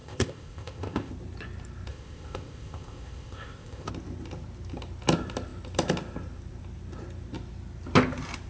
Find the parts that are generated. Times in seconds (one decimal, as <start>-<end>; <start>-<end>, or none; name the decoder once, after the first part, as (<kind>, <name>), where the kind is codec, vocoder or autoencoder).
0.0-1.1 (codec, ZipCodec); 1.9-3.9